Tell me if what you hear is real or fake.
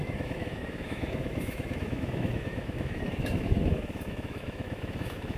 fake